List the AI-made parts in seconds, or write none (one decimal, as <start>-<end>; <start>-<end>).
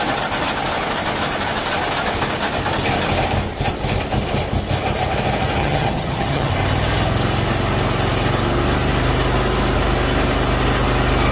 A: 5.6-6.5